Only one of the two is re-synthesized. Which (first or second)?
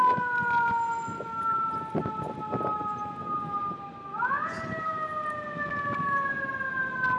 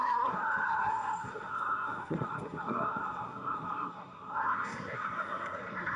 second